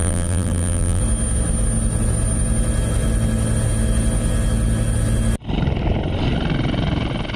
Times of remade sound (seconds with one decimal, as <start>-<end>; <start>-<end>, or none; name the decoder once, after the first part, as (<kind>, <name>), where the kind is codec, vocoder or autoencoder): 0.0-1.0 (vocoder, BigVGAN v2)